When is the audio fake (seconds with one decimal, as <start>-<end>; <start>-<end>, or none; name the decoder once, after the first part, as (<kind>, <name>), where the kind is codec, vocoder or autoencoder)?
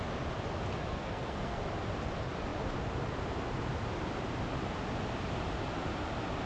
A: 0.9-1.6 (codec, SNAC)